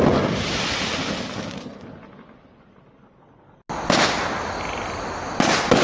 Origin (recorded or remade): recorded